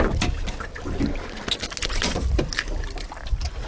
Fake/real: real